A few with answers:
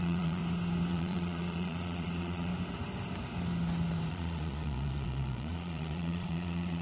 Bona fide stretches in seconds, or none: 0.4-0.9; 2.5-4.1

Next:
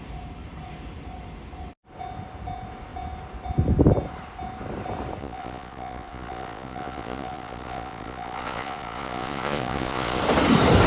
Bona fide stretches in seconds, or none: 0.0-5.2; 10.2-10.9

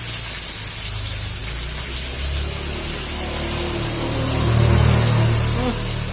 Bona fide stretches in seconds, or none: 0.0-6.1

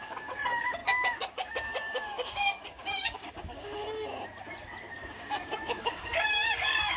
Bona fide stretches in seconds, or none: 3.8-4.8

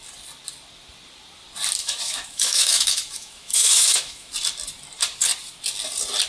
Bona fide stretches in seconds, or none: 0.0-1.8; 4.3-6.3

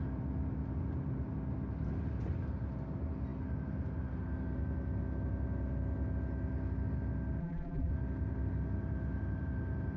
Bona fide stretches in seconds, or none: 0.0-7.4; 7.9-10.0